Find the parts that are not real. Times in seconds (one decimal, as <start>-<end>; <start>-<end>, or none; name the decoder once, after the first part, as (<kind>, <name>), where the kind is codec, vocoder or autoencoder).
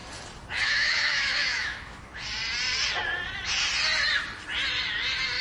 0.6-2.1 (autoencoder, DAC-VAE)